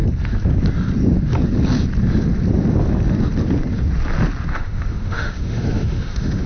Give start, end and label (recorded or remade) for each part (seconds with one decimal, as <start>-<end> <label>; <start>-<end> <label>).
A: 0.0-4.5 recorded; 4.5-6.5 remade